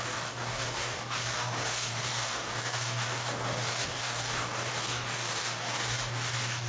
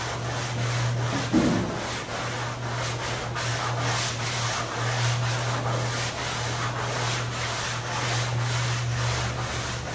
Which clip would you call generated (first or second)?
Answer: first